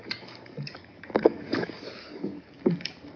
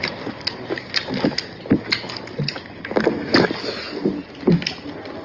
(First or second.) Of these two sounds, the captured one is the second